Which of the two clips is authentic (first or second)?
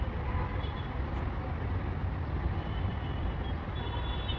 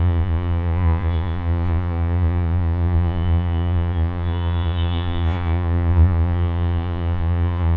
first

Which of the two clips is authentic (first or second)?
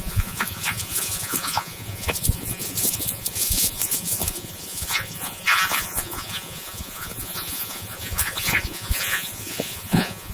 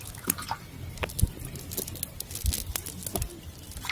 second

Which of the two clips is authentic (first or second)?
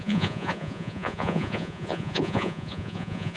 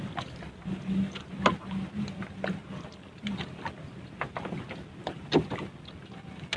second